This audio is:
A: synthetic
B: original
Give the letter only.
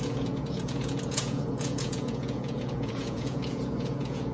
A